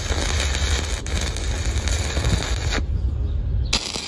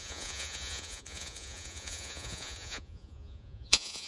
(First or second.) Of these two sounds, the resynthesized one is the second